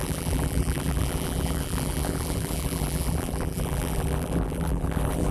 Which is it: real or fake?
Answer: fake